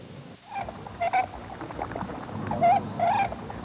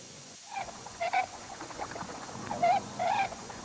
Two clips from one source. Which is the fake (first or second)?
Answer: second